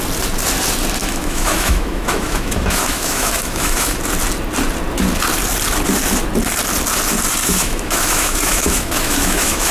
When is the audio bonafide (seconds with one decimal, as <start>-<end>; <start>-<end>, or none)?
0.0-1.0; 4.0-7.4